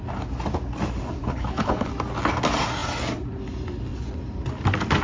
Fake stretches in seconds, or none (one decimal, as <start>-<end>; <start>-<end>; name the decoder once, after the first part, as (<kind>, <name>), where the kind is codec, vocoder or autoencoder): 1.2-1.9 (codec, HILCodec)